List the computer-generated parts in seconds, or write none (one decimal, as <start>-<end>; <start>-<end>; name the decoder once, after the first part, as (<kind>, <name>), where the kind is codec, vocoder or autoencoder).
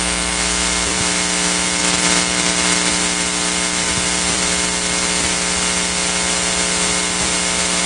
1.8-2.9 (vocoder, BigVGAN v2)